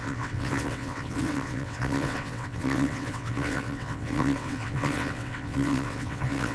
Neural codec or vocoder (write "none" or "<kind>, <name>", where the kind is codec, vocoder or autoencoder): vocoder, WaveNeXt